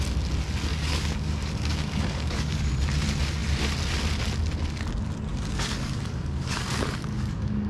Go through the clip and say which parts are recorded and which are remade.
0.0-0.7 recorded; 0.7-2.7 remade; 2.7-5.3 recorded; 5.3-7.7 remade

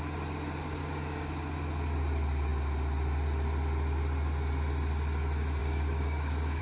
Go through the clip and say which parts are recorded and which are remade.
0.0-0.8 recorded; 0.8-1.3 remade; 1.3-5.6 recorded; 5.6-6.6 remade